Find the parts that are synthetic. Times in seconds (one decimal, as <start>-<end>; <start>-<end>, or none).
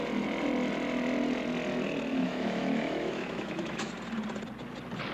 2.1-3.9